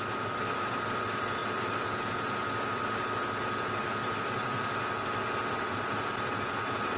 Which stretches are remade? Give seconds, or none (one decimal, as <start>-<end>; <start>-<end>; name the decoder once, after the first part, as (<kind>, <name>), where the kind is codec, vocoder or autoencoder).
none

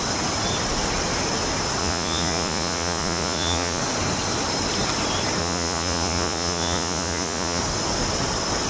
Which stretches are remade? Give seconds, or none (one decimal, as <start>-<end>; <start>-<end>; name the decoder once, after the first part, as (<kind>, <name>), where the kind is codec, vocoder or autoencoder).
1.8-3.8 (vocoder, Vocos); 5.4-7.6

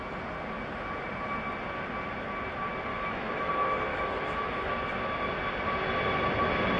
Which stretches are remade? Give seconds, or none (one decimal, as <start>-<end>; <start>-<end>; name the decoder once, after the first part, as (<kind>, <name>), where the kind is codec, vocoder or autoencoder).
2.9-3.5 (autoencoder, DAC-VAE); 3.9-4.7

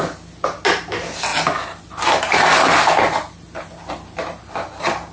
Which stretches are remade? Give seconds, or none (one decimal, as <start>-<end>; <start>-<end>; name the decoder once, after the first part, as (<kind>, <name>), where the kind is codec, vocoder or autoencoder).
none

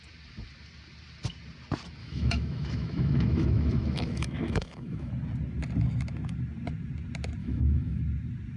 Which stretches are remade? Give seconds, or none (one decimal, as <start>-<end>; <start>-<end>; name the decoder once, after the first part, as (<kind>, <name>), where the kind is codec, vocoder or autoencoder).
2.0-5.1 (autoencoder, DAC-VAE); 7.4-8.0

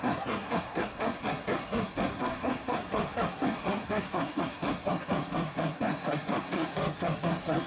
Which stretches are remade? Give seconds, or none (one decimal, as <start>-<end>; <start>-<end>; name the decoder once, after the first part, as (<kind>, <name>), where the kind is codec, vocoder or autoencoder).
0.0-7.7 (codec, SNAC)